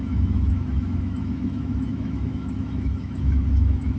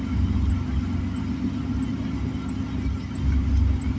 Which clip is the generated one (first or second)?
first